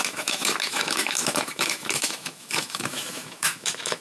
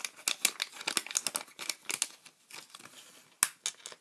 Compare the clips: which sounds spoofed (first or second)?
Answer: first